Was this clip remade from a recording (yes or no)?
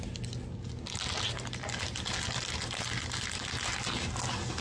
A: no